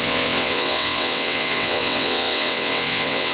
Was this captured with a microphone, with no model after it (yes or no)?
no